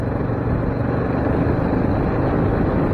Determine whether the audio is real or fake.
real